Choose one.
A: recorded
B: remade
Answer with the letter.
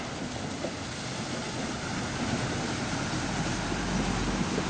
A